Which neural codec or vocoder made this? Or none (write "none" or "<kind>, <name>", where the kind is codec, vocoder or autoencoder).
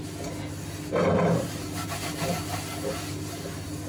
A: none